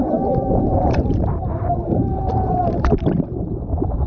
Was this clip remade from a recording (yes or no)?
yes